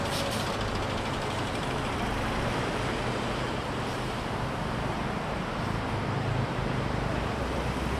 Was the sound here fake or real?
fake